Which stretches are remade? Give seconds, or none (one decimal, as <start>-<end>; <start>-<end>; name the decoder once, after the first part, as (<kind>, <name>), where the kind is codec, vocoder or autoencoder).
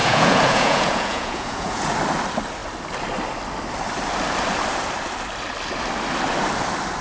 0.0-1.9 (vocoder, Vocos)